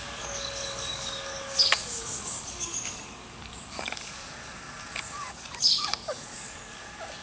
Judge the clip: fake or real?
fake